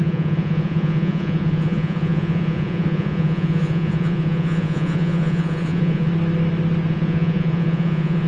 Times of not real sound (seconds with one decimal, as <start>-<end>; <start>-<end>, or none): 0.0-6.1; 6.9-8.3